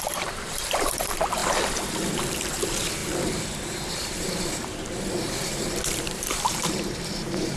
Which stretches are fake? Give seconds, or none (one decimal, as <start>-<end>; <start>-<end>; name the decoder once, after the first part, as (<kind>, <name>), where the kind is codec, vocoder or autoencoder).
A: 0.0-1.4 (vocoder, BigVGAN v2); 2.2-7.6